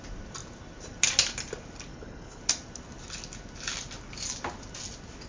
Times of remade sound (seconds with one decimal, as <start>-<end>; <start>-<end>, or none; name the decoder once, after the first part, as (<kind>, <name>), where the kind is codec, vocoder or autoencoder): 1.9-2.4 (codec, HILCodec)